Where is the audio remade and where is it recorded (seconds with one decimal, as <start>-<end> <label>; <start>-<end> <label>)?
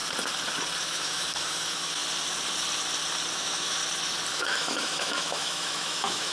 0.0-0.8 recorded; 0.8-2.0 remade; 2.0-3.3 recorded; 3.3-3.8 remade; 3.8-4.3 recorded; 4.3-6.3 remade